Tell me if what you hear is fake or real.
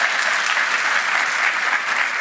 real